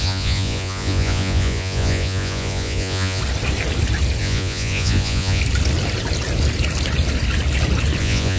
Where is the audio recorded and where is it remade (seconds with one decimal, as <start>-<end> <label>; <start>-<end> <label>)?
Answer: 0.0-3.2 remade; 3.2-4.2 recorded; 4.2-5.4 remade; 5.4-8.0 recorded; 8.0-8.4 remade